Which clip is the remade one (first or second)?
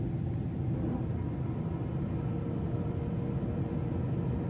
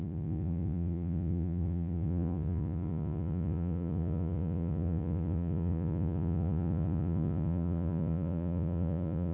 second